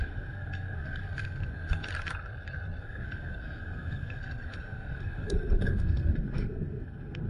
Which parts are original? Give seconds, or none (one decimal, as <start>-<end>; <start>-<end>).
1.9-2.8